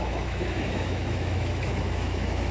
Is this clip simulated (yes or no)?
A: yes